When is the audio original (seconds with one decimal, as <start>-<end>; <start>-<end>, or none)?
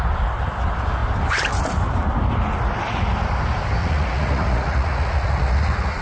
0.0-3.8